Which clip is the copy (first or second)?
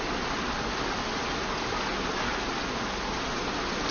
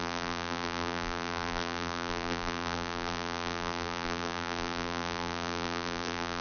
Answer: second